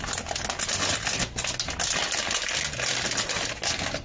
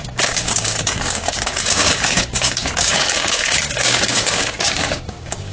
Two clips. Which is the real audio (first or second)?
first